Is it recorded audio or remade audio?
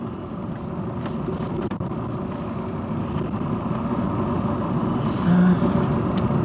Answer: recorded